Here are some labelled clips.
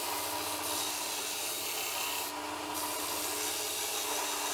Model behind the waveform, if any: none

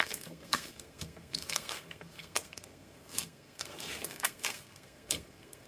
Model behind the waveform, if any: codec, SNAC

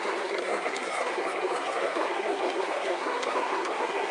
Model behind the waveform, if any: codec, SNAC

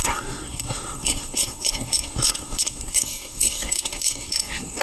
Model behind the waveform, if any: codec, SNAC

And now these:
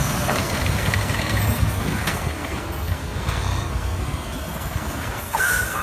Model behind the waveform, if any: codec, SNAC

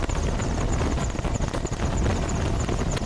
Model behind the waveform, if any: none